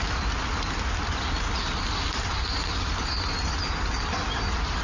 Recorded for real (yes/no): yes